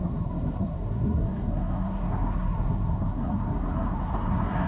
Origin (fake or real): fake